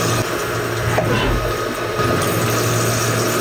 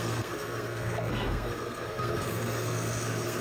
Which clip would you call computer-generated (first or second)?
second